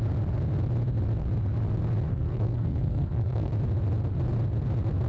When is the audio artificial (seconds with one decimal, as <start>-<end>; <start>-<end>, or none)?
2.1-3.5